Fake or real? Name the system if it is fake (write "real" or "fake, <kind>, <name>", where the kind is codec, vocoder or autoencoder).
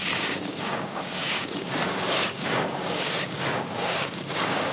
fake, codec, DAC